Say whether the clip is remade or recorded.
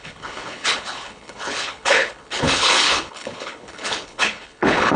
remade